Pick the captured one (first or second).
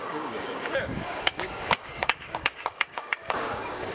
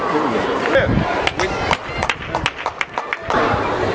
second